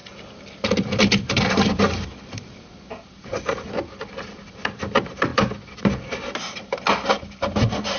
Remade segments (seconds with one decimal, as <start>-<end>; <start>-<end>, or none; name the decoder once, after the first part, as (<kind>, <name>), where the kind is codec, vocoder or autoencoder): none